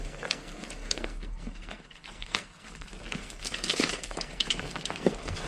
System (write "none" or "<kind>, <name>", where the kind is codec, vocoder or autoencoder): codec, SNAC